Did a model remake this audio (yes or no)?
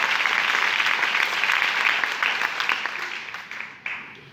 no